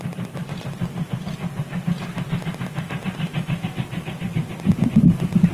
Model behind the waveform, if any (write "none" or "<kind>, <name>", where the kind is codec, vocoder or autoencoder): none